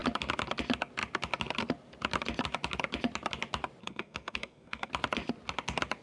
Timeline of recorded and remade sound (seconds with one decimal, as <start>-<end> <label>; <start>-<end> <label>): 0.0-3.8 recorded; 3.8-4.9 remade; 4.9-6.0 recorded